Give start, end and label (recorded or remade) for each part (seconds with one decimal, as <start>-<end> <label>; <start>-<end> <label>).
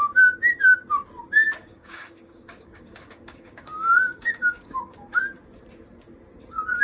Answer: 0.0-1.6 recorded; 1.6-5.2 remade; 5.2-6.8 recorded